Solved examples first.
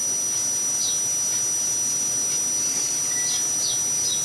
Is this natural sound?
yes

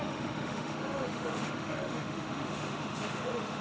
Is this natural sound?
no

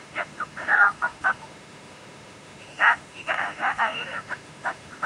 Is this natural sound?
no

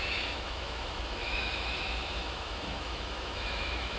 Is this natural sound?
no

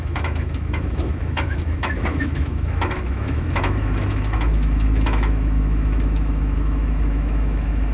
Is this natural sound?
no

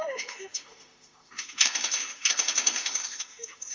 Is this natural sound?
no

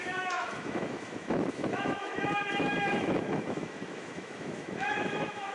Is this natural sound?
no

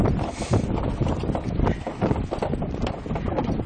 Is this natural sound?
yes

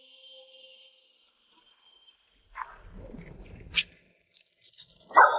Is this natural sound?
yes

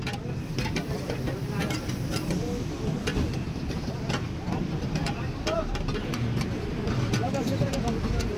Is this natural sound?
yes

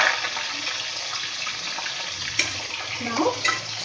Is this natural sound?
yes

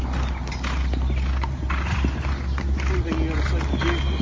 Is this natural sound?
yes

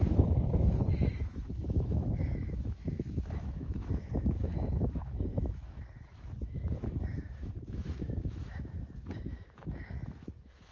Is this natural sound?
no